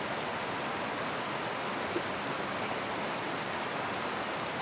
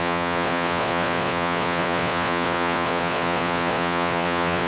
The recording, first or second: first